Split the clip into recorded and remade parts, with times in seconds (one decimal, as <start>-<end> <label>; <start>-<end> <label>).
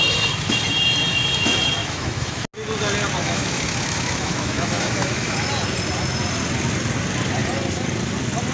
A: 0.0-1.8 recorded; 1.8-2.4 remade; 2.4-3.2 recorded; 3.2-5.5 remade; 5.5-8.5 recorded